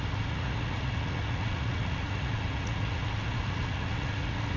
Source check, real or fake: fake